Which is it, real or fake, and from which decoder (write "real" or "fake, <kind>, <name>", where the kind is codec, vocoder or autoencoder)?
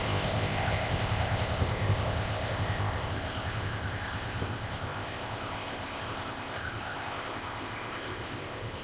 fake, codec, ZipCodec